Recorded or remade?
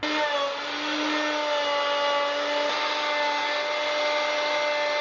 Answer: recorded